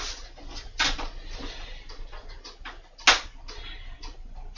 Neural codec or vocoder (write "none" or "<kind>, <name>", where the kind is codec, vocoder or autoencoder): none